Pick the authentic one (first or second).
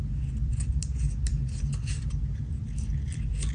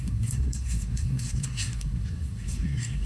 first